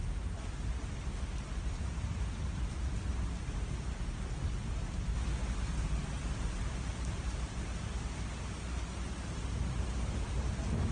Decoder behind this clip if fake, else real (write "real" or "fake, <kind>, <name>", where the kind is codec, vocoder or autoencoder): real